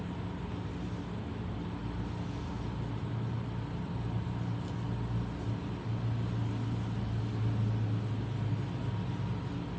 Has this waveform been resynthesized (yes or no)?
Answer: no